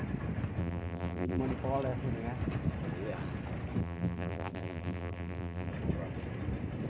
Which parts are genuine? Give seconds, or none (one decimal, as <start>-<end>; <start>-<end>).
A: 0.0-0.6; 1.4-3.8; 5.7-6.9